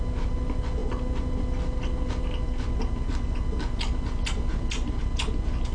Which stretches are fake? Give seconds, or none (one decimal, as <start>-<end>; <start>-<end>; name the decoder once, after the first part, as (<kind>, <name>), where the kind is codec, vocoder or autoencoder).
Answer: none